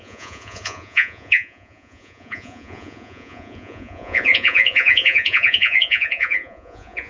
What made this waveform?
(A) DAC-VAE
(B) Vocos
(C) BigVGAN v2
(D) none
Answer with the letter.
B